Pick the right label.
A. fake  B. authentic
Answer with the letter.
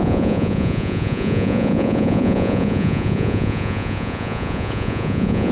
A